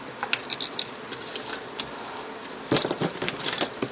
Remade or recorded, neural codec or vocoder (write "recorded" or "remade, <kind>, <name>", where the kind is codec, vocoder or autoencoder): recorded